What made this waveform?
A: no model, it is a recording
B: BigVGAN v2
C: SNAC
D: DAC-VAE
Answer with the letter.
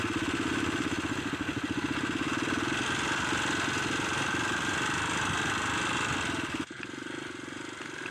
A